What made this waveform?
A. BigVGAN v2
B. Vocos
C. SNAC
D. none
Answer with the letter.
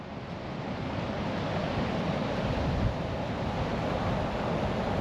D